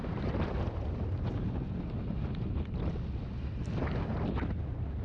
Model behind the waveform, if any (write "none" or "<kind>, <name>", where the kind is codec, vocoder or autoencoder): none